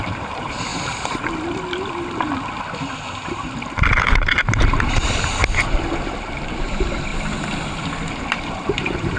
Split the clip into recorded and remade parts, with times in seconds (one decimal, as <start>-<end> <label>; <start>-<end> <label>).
0.0-0.7 remade; 0.7-4.0 recorded; 4.0-5.4 remade; 5.4-6.6 recorded; 6.6-7.1 remade; 7.1-8.3 recorded; 8.3-9.2 remade